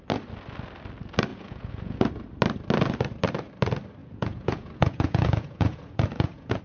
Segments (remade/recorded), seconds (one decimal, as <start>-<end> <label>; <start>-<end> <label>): 0.0-1.3 recorded; 1.3-2.1 remade; 2.1-4.0 recorded; 4.0-6.6 remade